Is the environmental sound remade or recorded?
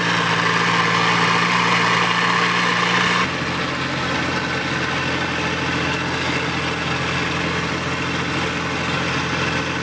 recorded